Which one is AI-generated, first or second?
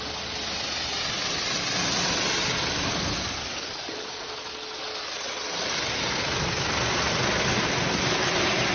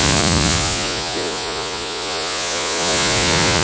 second